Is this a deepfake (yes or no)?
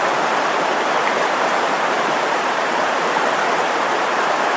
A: yes